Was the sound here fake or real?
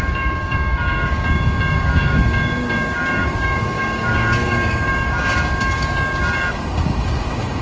fake